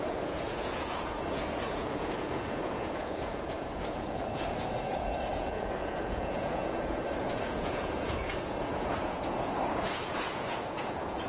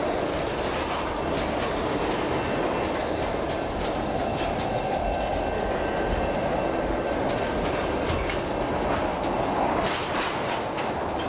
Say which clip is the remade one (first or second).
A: first